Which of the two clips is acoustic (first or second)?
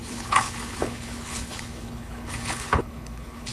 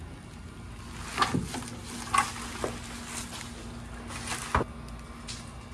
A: second